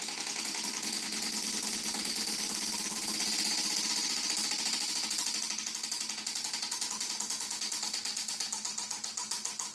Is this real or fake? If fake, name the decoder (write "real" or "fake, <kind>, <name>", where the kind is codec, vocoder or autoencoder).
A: real